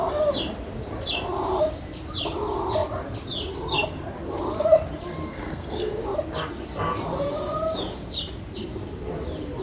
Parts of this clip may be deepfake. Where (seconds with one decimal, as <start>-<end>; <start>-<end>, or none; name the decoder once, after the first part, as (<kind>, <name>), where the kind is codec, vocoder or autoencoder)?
5.3-6.0 (codec, SNAC)